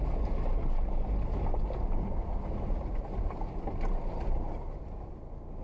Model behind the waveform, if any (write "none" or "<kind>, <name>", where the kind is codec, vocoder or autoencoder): none